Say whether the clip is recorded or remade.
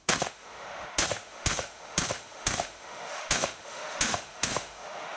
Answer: remade